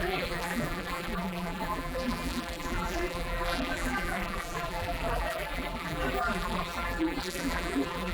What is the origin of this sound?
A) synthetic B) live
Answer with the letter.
A